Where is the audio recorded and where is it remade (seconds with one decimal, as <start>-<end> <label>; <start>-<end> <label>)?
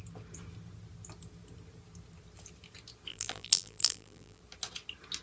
0.0-3.1 recorded; 3.1-4.4 remade; 4.4-5.2 recorded